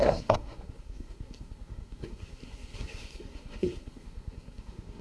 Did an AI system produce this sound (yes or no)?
yes